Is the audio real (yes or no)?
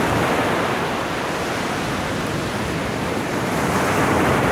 yes